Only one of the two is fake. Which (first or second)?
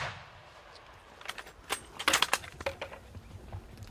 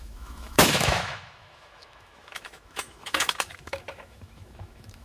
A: second